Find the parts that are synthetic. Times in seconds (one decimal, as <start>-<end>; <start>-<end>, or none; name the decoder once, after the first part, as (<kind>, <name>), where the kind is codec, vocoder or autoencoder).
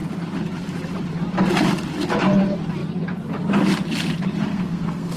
4.5-5.2 (codec, SNAC)